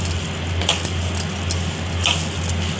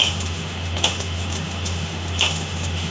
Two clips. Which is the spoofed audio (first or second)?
second